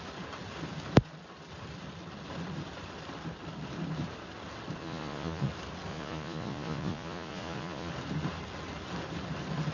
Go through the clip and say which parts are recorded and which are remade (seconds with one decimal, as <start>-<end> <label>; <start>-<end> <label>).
0.0-4.8 recorded; 4.8-5.5 remade; 5.5-5.9 recorded; 5.9-7.9 remade; 7.9-9.7 recorded